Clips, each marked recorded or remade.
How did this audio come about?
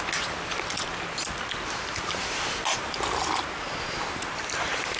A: recorded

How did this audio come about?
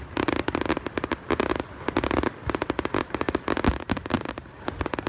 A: remade